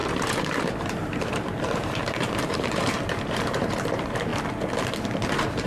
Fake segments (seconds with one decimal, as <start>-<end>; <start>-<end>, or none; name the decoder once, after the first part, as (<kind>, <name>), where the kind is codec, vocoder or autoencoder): 0.0-4.3 (vocoder, BigVGAN v2); 5.3-5.7